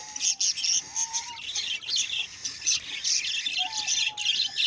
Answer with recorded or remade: recorded